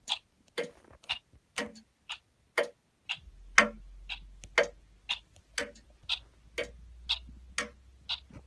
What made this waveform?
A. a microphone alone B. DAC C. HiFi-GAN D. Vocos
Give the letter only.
A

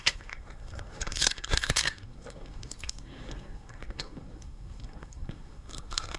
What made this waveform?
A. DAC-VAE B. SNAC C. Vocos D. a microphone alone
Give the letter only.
B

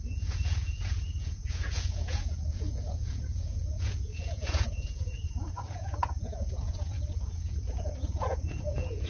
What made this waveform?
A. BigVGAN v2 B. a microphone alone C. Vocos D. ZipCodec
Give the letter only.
C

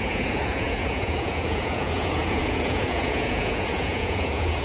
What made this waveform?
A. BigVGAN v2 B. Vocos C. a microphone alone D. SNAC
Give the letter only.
B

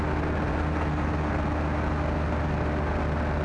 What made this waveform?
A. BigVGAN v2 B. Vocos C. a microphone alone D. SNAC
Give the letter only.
C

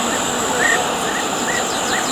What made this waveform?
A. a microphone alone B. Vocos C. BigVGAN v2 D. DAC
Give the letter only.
A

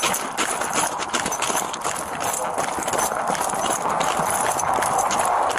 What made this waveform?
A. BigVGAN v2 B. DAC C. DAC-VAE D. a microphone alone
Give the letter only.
D